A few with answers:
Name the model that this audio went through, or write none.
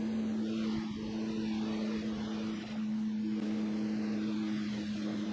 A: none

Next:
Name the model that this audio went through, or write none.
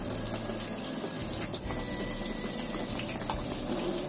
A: none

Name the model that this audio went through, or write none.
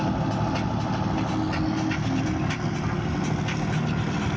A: none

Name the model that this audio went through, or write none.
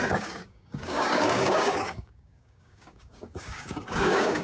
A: codec, DAC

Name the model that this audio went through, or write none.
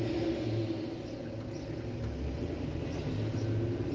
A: none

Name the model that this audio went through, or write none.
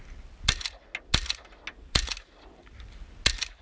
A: none